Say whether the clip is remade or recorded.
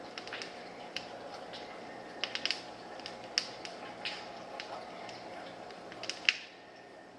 recorded